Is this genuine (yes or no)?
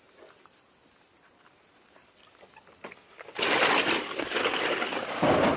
yes